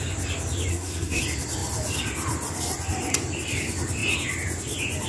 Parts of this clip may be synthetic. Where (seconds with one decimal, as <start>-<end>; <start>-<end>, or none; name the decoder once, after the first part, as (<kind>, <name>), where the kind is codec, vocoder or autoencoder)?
0.7-1.2 (codec, SNAC)